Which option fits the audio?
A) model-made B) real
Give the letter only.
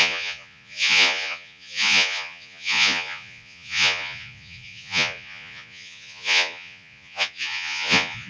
A